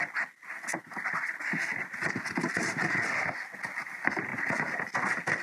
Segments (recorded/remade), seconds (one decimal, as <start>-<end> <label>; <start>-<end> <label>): 0.0-5.4 recorded